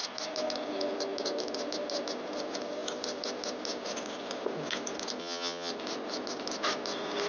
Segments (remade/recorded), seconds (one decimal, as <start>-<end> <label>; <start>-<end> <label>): 0.0-5.2 recorded; 5.2-5.7 remade; 5.7-7.3 recorded